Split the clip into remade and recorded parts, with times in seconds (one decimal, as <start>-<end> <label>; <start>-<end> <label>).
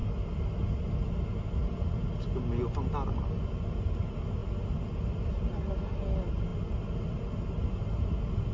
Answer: 0.0-8.5 recorded